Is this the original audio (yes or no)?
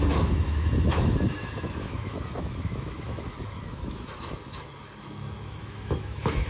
no